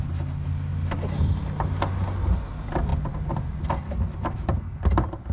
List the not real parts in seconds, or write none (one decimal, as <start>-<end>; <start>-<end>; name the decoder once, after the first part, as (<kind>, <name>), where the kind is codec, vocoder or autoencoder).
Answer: none